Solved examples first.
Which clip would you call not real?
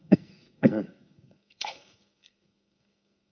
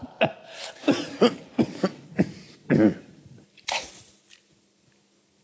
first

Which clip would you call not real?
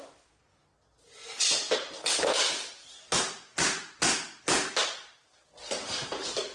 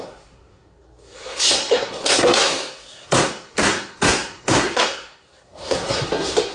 second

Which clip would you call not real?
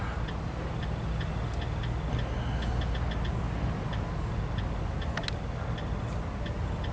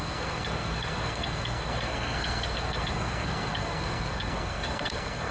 second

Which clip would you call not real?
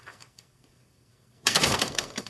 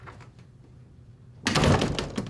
first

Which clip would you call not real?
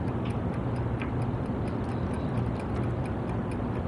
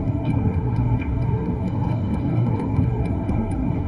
second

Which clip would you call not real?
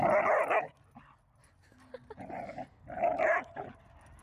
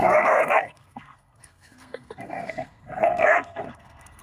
second